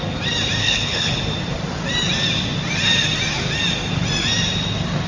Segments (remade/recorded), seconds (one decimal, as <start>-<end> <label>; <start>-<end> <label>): 0.0-0.6 recorded; 0.6-1.2 remade; 1.2-5.1 recorded